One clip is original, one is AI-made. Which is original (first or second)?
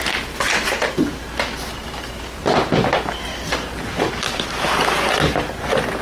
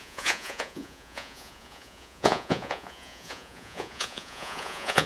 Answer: first